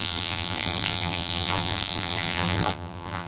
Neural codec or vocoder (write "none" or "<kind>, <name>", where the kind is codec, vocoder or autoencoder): vocoder, BigVGAN v2